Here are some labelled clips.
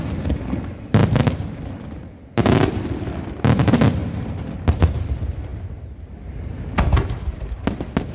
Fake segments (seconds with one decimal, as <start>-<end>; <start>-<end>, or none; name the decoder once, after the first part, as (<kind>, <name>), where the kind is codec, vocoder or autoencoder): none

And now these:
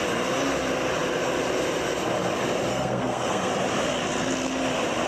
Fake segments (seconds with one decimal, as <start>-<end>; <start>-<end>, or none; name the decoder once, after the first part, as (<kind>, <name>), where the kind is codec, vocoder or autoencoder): 2.7-3.5 (codec, SNAC)

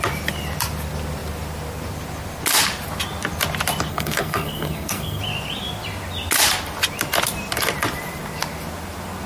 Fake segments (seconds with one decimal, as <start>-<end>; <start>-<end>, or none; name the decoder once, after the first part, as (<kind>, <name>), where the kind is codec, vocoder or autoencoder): 3.9-5.2 (codec, SNAC)